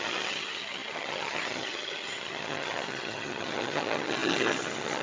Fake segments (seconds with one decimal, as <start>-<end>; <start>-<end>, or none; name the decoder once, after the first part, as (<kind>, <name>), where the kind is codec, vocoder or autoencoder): 0.0-5.0 (vocoder, HiFi-GAN)